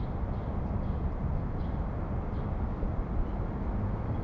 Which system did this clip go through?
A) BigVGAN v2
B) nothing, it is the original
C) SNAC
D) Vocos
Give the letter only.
B